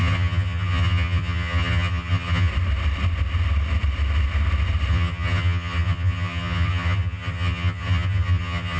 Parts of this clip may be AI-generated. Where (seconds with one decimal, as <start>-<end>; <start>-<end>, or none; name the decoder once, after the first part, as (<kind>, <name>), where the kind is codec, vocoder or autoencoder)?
0.0-2.5 (vocoder, HiFi-GAN); 4.9-8.8